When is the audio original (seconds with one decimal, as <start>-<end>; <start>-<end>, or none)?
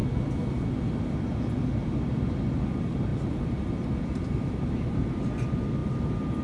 0.0-3.1; 5.0-5.8